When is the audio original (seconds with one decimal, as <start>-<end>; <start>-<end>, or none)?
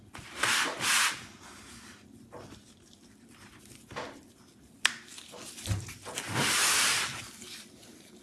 0.0-8.2